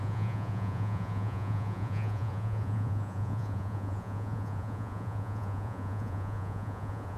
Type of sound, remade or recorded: remade